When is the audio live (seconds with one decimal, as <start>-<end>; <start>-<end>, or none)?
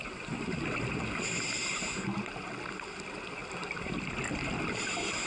0.0-3.4